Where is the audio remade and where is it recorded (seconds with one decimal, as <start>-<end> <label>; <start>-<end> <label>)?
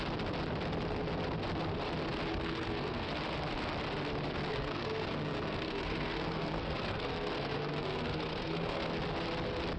0.0-2.3 recorded; 2.3-3.1 remade; 3.1-4.5 recorded; 4.5-8.9 remade; 8.9-9.8 recorded